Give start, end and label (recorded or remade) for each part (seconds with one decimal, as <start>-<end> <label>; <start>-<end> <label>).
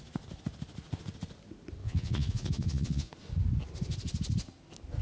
0.0-1.8 recorded; 1.8-3.1 remade; 3.1-5.0 recorded